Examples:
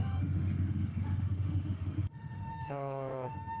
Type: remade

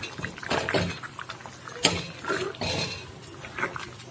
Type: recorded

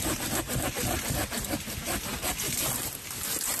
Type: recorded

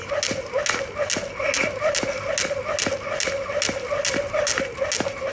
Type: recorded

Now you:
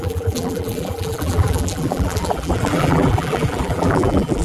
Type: remade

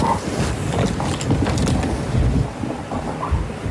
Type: recorded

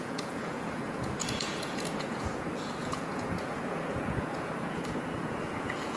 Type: remade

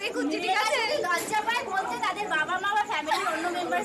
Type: recorded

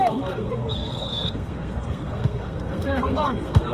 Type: remade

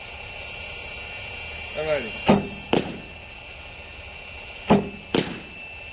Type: recorded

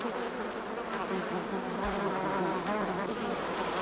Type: recorded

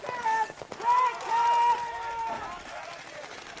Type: recorded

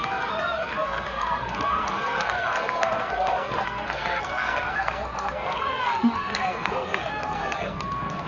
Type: remade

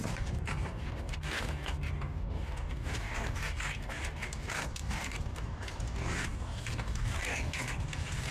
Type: remade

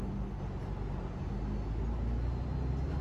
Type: recorded